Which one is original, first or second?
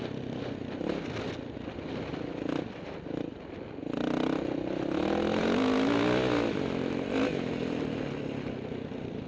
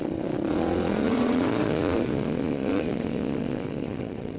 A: first